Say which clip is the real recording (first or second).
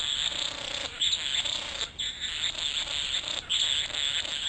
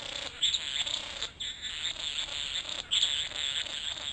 second